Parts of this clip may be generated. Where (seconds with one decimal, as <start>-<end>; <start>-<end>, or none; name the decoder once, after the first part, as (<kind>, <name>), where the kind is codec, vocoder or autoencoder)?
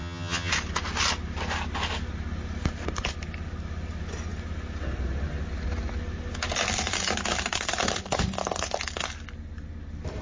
0.0-0.5 (vocoder, HiFi-GAN)